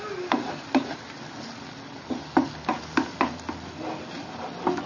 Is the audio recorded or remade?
recorded